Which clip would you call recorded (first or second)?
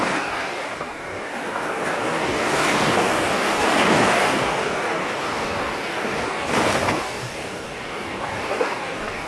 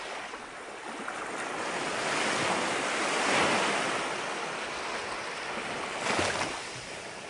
second